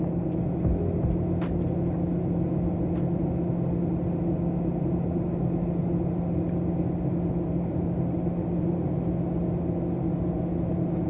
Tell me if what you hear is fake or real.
real